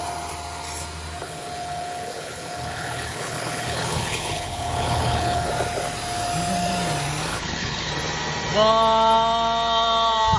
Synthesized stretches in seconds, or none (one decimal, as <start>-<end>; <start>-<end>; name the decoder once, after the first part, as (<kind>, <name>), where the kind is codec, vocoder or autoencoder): 1.2-5.5 (codec, HILCodec); 7.3-7.9